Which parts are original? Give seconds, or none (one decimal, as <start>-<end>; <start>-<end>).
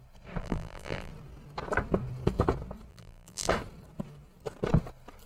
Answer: 0.0-0.4; 1.1-2.9; 3.5-5.3